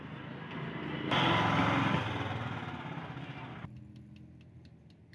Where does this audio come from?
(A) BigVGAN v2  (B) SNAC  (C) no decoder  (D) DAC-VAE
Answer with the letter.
C